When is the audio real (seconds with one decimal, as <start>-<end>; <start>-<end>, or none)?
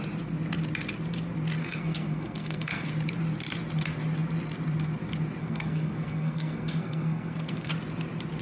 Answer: 0.0-1.6; 2.9-5.4; 7.7-8.4